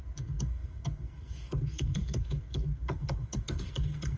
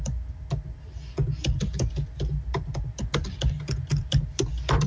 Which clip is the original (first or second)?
second